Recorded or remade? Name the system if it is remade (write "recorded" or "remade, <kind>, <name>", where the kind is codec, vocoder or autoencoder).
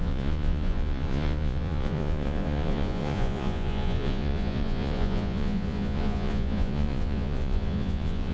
remade, vocoder, Vocos